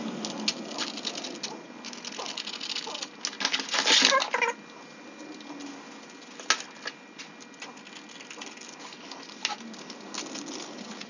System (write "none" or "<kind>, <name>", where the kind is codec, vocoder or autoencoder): none